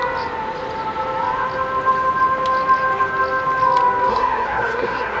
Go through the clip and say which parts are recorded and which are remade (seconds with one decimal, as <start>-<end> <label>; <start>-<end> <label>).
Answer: 0.0-4.1 recorded; 4.1-5.2 remade